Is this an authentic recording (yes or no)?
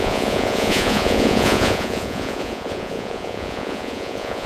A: no